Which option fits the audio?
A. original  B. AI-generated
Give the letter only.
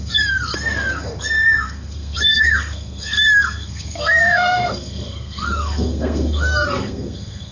B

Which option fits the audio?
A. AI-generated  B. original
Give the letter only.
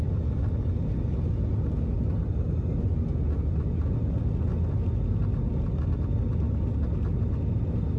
B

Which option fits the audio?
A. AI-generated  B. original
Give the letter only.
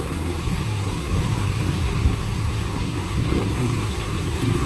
A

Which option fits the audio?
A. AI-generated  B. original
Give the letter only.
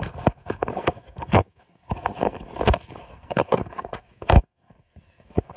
A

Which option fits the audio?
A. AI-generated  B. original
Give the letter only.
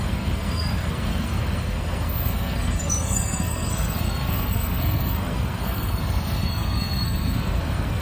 A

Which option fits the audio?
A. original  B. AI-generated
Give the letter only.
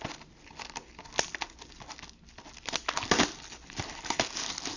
A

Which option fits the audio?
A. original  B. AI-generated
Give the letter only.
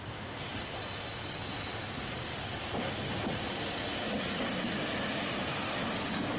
A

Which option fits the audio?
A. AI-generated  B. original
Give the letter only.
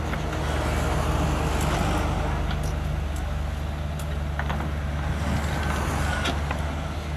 B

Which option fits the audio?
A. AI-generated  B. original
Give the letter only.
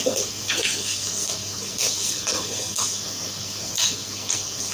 A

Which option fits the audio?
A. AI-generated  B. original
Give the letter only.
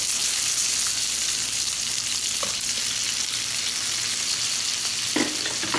B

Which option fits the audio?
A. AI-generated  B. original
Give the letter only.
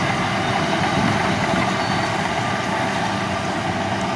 B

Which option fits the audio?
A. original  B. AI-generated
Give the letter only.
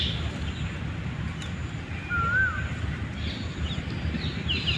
A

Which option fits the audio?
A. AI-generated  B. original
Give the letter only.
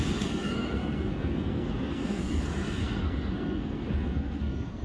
A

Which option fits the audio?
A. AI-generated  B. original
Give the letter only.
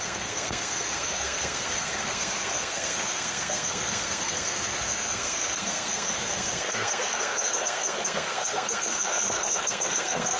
A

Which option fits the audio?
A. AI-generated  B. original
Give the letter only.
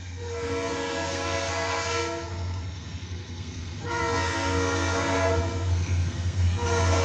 A